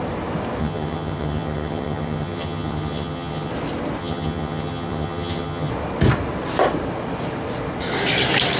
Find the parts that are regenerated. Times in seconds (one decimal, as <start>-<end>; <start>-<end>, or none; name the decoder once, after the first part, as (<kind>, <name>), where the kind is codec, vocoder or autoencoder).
0.6-3.5 (vocoder, HiFi-GAN); 4.0-5.7